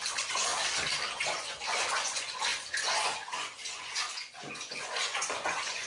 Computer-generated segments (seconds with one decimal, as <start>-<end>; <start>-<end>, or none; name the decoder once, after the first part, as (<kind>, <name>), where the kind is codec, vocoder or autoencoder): 0.0-0.5 (vocoder, Vocos); 1.2-5.9